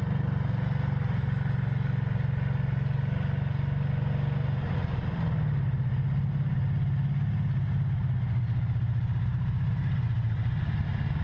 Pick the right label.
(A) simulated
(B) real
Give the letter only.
B